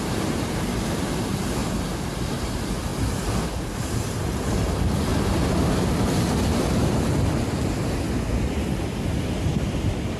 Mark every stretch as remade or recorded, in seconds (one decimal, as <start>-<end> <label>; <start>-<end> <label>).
0.0-1.6 remade; 1.6-2.5 recorded; 2.5-2.9 remade; 2.9-3.5 recorded; 3.5-5.1 remade; 5.1-9.0 recorded; 9.0-10.2 remade